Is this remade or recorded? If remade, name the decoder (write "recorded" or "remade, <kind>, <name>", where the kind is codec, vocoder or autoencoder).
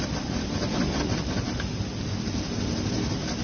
recorded